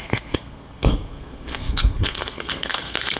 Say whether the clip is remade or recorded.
remade